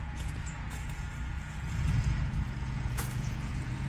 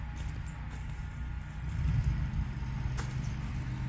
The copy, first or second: first